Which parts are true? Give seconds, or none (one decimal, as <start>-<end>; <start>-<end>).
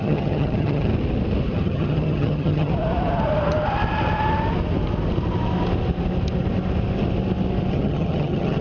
0.9-1.5; 2.7-7.7